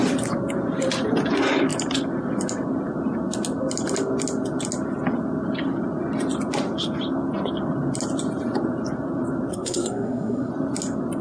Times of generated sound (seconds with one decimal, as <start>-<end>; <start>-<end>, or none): 9.5-10.5